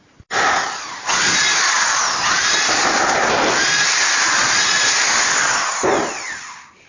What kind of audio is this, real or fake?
real